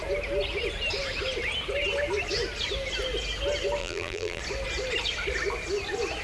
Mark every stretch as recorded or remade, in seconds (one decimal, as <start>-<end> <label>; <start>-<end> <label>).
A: 0.0-3.8 recorded; 3.8-4.4 remade; 4.4-6.2 recorded